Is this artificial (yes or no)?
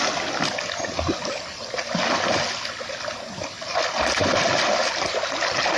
no